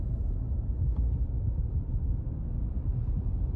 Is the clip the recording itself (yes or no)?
yes